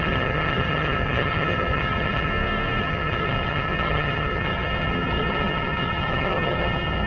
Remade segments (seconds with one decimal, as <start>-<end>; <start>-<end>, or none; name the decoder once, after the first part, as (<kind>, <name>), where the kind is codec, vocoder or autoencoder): 0.0-2.3 (vocoder, HiFi-GAN); 2.8-7.1